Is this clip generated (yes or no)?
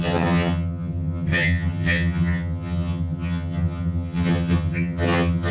yes